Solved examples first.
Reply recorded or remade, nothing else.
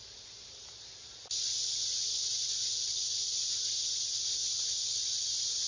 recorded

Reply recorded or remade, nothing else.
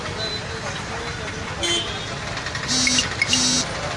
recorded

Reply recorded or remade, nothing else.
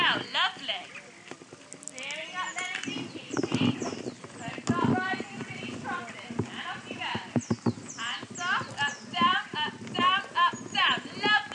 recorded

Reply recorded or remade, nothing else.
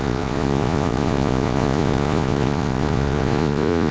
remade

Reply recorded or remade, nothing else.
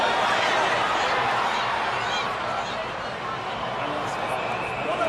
recorded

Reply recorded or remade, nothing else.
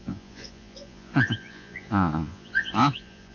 remade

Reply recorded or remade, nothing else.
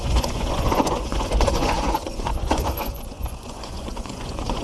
remade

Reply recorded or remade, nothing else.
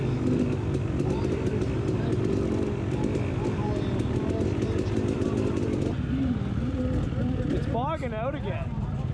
recorded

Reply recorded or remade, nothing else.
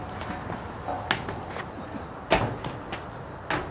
recorded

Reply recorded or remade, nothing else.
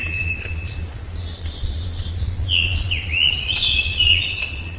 remade